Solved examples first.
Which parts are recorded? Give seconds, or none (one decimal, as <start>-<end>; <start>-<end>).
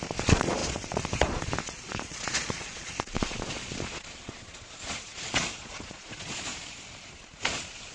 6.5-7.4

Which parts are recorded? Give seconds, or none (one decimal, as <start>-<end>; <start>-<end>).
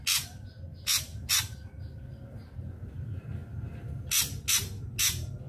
0.0-0.7; 1.3-5.5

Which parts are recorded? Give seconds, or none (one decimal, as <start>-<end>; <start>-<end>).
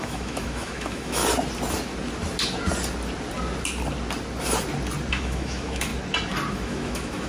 1.2-5.1; 5.9-6.5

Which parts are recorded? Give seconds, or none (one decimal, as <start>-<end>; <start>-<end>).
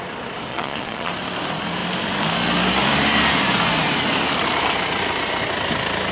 0.0-0.5; 1.1-6.1